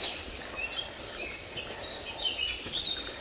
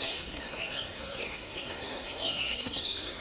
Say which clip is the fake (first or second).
second